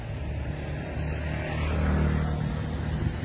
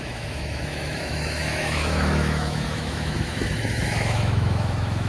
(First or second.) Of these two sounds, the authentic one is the first